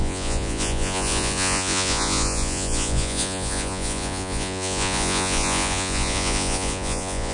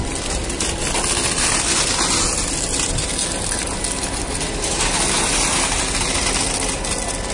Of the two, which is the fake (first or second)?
first